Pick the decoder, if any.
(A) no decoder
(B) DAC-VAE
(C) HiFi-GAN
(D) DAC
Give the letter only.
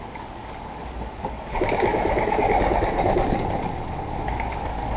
D